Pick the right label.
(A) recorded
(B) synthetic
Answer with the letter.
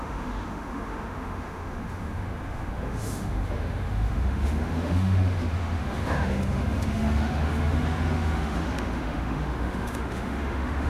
B